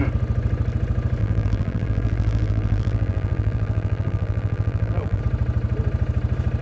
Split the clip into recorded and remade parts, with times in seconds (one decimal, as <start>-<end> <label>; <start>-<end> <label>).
0.0-1.2 recorded; 1.2-5.2 remade; 5.2-6.6 recorded